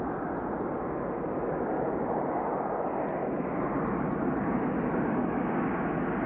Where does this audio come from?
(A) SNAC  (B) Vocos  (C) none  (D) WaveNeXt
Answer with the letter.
C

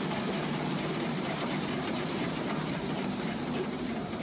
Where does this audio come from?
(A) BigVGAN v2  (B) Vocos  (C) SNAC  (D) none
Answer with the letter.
A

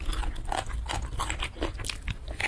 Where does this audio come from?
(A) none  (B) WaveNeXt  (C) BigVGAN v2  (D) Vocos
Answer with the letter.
A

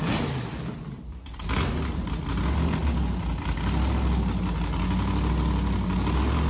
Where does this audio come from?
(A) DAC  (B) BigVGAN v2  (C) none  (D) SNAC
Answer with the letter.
C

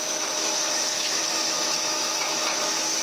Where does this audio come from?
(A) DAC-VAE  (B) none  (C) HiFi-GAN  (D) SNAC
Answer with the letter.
A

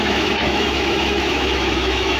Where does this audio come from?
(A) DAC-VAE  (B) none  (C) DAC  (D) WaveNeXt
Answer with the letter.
A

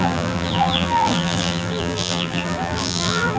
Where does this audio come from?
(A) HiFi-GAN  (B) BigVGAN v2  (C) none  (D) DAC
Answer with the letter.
B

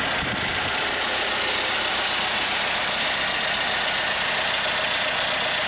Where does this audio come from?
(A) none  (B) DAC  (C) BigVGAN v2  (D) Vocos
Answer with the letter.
A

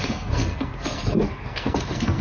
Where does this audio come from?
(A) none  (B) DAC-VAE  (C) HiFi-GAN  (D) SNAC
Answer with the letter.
D